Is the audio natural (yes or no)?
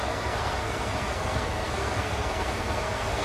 no